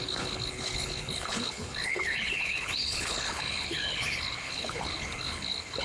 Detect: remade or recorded remade